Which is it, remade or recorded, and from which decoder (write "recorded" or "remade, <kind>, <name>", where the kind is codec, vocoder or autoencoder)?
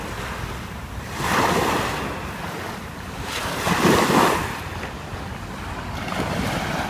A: recorded